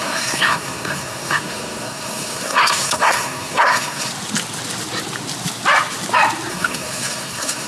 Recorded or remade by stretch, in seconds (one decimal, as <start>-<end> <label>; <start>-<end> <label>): 0.0-4.1 remade; 4.1-6.5 recorded; 6.5-7.7 remade